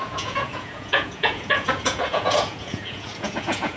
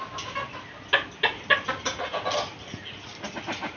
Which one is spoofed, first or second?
first